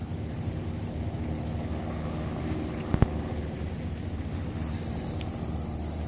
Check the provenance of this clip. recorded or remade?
recorded